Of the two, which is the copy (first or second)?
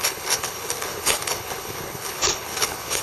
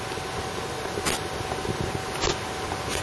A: first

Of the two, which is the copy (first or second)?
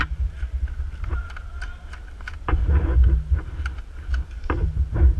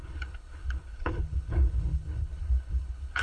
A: second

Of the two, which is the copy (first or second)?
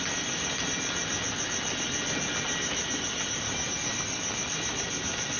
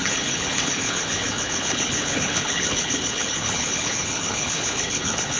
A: second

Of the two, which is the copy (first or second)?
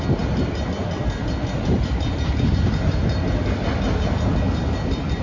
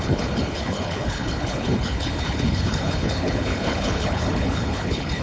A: second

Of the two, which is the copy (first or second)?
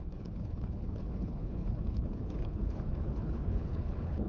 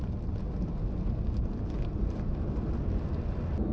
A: first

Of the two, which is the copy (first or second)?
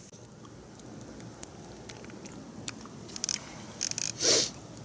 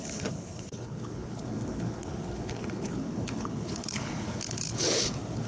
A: second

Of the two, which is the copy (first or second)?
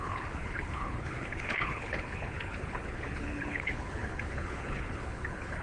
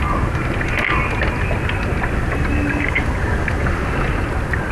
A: first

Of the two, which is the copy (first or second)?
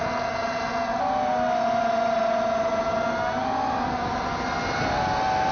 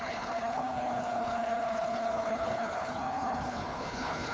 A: second